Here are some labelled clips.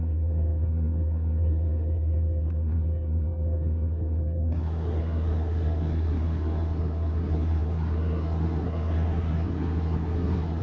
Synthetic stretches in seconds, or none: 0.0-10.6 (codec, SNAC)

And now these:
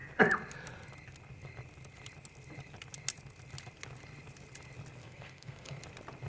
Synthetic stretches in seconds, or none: 5.0-5.8 (codec, SNAC)